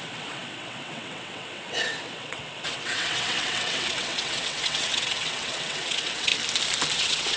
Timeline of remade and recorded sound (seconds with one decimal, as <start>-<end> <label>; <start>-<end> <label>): 0.0-6.3 remade; 6.3-6.9 recorded; 6.9-7.4 remade